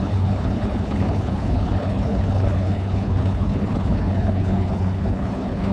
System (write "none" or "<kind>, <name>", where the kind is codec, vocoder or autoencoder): codec, HILCodec